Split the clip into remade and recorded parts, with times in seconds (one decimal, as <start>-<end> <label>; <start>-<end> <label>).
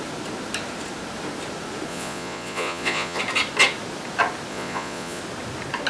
0.0-1.9 recorded; 1.9-3.2 remade; 3.2-4.5 recorded; 4.5-5.2 remade; 5.2-5.9 recorded